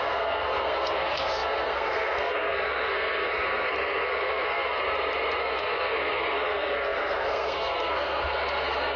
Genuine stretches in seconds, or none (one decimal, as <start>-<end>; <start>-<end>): 4.8-5.4